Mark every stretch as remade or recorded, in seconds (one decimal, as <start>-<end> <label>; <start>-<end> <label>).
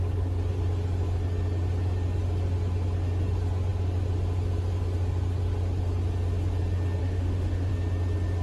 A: 0.0-7.0 recorded; 7.0-7.7 remade; 7.7-8.4 recorded